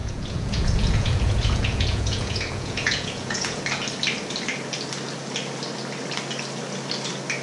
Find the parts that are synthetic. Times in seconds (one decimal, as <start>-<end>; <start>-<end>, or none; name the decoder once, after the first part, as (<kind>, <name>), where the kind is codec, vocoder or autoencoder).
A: 0.0-3.6 (vocoder, Vocos)